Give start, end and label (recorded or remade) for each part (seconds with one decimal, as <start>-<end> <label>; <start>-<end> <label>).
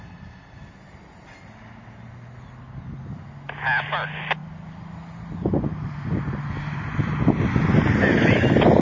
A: 0.0-4.4 recorded; 4.4-6.4 remade; 6.4-8.8 recorded